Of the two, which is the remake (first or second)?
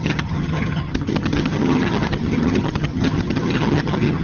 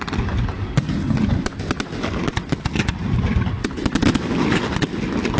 first